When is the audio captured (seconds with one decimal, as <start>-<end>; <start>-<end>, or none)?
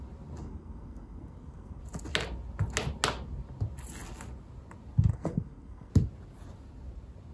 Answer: 0.0-0.4; 1.8-5.1; 5.9-7.3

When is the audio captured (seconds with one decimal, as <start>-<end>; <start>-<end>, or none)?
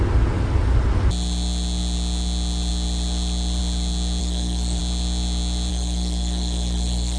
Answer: 0.0-4.2; 4.8-5.7